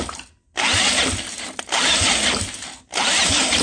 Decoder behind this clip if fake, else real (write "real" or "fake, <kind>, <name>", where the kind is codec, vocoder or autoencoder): real